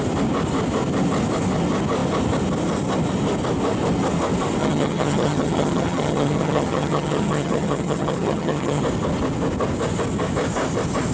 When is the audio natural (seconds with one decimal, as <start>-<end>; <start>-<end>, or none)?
0.0-4.6; 8.8-11.1